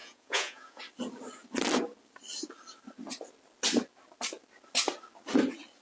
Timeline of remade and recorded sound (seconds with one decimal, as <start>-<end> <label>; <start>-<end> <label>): 0.0-0.8 remade; 0.8-5.8 recorded